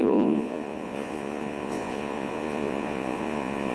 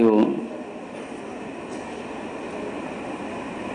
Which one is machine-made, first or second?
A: first